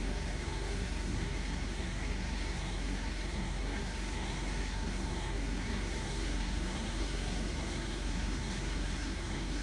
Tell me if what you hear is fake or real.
fake